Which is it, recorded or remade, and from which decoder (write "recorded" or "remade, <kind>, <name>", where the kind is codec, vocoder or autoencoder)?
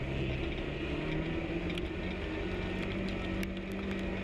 recorded